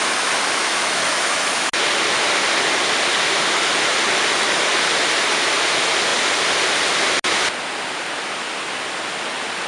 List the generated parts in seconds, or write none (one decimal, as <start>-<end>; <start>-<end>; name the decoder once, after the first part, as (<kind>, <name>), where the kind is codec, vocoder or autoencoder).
0.6-1.7 (autoencoder, DAC-VAE)